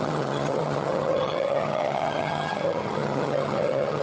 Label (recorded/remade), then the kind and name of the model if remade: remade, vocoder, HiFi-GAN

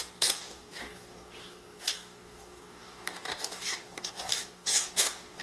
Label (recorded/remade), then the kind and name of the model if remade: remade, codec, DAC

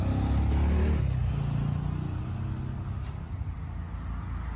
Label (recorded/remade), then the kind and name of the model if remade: recorded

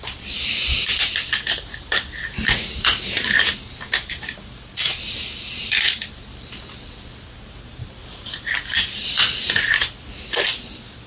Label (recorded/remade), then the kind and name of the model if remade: remade, vocoder, BigVGAN v2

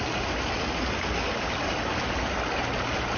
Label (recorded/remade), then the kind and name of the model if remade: recorded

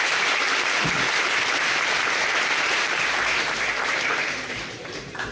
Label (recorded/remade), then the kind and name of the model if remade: remade, vocoder, BigVGAN v2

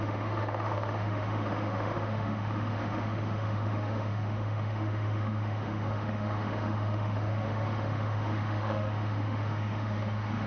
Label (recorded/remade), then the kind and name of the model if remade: remade, autoencoder, DAC-VAE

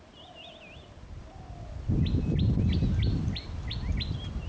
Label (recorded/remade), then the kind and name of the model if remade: recorded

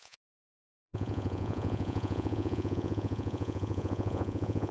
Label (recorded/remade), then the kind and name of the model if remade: remade, vocoder, Vocos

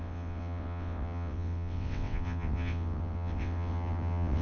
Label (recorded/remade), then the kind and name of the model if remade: remade, vocoder, WaveNeXt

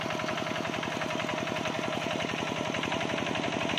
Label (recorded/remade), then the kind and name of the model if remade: recorded